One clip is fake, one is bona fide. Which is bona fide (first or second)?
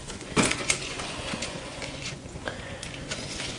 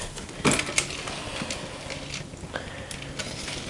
second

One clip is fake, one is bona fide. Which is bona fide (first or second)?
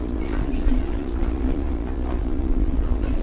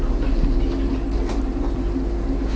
second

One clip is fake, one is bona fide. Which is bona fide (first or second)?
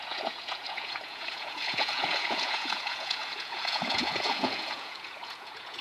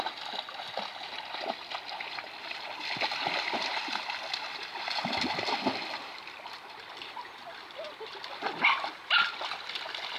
second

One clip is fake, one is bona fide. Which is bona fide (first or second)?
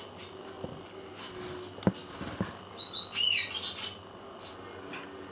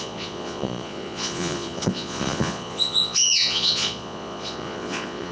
first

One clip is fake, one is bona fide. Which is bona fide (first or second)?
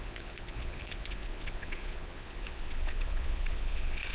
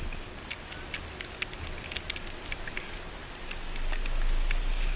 second